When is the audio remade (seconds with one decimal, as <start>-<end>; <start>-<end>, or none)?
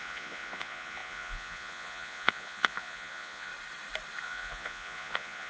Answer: 0.0-3.5; 4.2-5.5